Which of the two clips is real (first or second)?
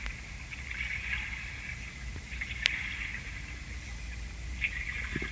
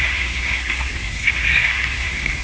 first